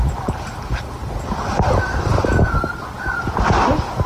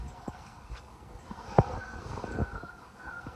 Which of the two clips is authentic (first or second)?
first